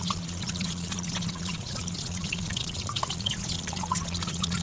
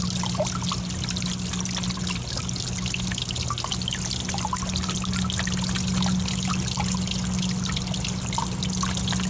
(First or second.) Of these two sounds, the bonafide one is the second